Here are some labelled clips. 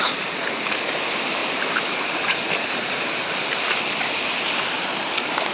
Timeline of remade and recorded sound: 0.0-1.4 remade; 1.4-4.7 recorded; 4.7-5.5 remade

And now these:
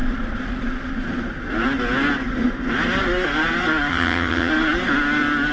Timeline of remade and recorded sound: 0.0-3.9 recorded; 3.9-4.5 remade; 4.5-5.5 recorded

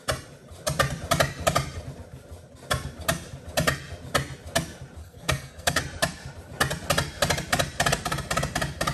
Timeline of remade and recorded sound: 0.0-5.0 recorded; 5.0-5.8 remade; 5.8-8.9 recorded

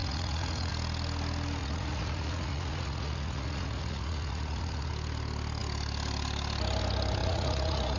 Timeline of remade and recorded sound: 0.0-0.7 remade; 0.7-1.6 recorded; 1.6-4.9 remade; 4.9-7.2 recorded; 7.2-8.0 remade

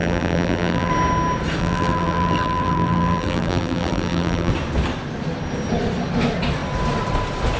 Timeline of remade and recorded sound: 0.0-0.9 remade; 0.9-1.6 recorded; 1.6-4.5 remade; 4.5-7.6 recorded

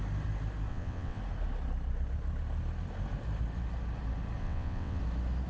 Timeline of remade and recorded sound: 0.0-0.7 recorded; 0.7-1.2 remade; 1.2-4.4 recorded; 4.4-5.0 remade; 5.0-5.5 recorded